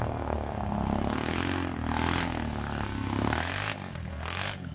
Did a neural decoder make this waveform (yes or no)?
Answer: yes